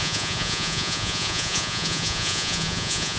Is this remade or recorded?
remade